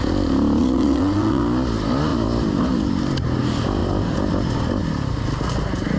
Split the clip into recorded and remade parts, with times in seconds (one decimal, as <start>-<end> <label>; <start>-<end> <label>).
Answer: 0.0-0.6 recorded; 0.6-1.4 remade; 1.4-6.0 recorded